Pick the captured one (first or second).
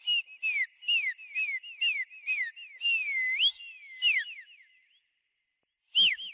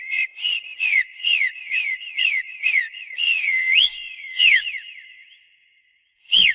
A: first